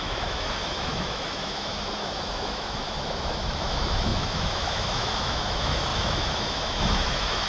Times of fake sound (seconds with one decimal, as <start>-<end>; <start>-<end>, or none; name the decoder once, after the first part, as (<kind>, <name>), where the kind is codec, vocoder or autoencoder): 0.0-7.5 (autoencoder, DAC-VAE)